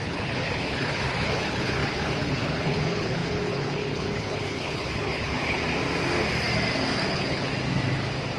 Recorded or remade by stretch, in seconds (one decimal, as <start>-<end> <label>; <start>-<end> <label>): 0.0-5.6 remade; 5.6-7.1 recorded; 7.1-7.5 remade; 7.5-8.4 recorded